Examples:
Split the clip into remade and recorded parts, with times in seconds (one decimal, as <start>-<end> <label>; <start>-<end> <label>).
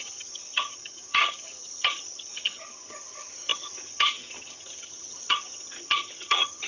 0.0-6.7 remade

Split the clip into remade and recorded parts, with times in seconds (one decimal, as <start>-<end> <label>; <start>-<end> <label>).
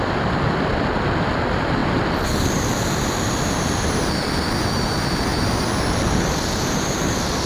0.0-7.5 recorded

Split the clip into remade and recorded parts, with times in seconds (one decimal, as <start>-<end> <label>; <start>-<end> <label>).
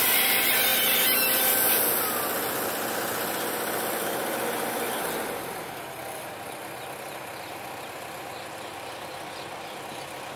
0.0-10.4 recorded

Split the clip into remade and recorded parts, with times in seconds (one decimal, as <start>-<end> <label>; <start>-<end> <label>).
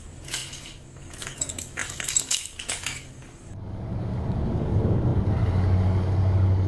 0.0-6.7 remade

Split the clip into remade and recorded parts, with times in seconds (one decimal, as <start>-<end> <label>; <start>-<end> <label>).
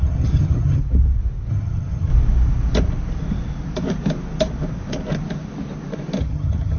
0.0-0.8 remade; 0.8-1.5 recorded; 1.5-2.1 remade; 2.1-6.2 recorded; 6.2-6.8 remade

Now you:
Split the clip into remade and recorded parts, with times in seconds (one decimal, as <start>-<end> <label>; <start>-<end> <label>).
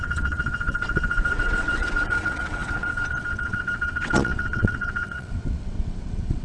0.0-6.4 remade